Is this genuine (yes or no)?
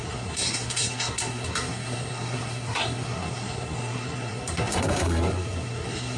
no